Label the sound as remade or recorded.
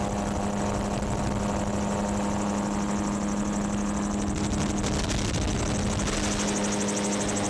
recorded